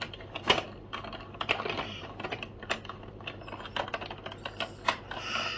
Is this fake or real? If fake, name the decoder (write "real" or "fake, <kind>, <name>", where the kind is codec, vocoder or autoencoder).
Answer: real